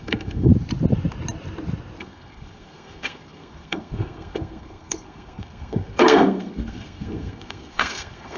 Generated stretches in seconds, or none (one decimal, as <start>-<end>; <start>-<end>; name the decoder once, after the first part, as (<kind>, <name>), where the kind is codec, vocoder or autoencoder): 0.0-0.5 (codec, SNAC); 2.0-8.4